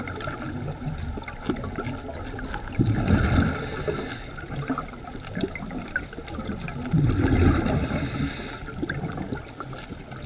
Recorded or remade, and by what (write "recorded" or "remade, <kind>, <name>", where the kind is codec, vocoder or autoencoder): recorded